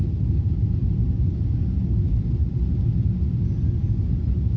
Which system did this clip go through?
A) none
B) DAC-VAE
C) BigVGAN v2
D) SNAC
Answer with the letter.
A